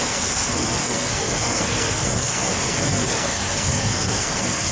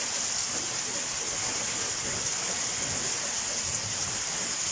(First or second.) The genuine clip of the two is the second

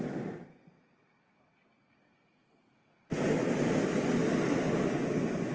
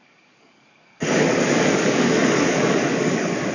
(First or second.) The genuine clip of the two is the first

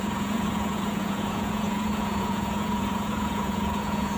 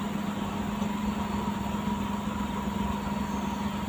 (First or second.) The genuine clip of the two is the second